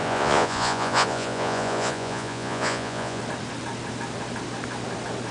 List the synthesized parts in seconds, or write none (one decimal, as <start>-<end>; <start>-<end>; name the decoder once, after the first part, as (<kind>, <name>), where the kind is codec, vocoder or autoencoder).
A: 0.0-3.2 (vocoder, Vocos)